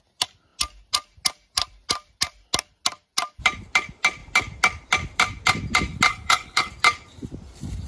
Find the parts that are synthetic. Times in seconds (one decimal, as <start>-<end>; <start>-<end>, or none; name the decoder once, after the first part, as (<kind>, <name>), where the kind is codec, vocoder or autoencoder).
6.1-6.7 (codec, HILCodec)